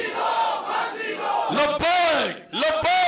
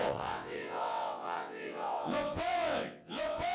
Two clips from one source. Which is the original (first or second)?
first